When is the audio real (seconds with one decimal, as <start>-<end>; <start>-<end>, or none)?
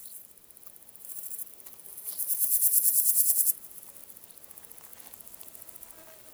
3.8-6.3